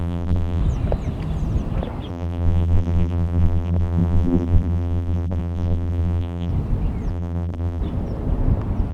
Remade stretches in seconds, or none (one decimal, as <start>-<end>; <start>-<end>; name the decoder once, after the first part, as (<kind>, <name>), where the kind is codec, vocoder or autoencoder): 0.0-0.6 (vocoder, BigVGAN v2); 2.1-6.5; 7.1-7.8

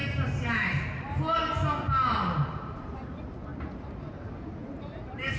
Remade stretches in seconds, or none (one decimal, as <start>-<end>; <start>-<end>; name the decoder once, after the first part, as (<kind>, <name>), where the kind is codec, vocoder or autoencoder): 0.0-1.4 (vocoder, BigVGAN v2); 2.1-5.4

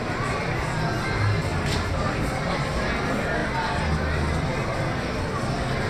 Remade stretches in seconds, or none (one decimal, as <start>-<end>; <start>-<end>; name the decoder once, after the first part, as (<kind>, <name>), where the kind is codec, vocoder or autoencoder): none

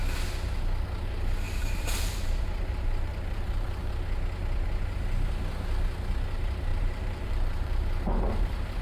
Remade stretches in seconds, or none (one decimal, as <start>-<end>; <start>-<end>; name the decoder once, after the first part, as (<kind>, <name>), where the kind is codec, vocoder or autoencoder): 1.6-3.9 (vocoder, BigVGAN v2); 6.7-8.8

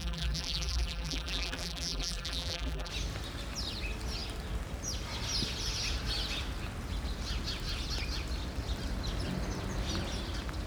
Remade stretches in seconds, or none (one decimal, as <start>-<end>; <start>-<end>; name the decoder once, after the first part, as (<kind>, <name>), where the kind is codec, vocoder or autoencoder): 0.0-2.9 (vocoder, BigVGAN v2)

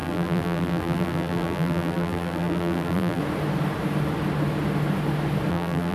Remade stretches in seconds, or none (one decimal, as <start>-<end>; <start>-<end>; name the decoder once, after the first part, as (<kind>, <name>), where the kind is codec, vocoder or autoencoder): 0.0-3.2 (vocoder, BigVGAN v2); 5.5-5.9

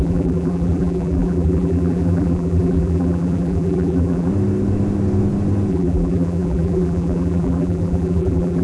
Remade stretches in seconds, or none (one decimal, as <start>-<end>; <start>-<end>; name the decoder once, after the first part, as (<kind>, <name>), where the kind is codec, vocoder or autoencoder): 0.0-4.3 (vocoder, BigVGAN v2); 5.7-8.6